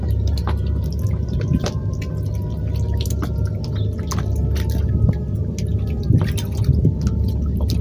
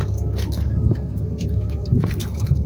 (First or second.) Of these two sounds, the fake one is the second